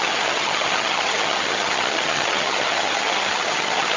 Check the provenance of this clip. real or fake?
fake